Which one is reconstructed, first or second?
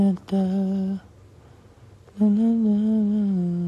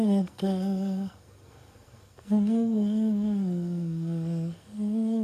second